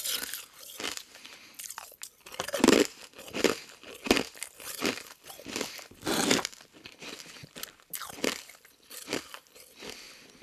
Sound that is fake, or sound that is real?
real